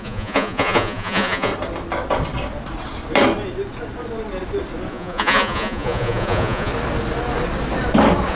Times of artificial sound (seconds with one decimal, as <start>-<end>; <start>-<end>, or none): 0.0-1.5; 4.9-6.7